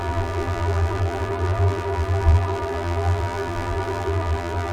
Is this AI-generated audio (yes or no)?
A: yes